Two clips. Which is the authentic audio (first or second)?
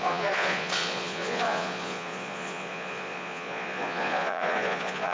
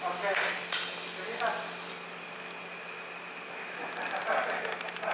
second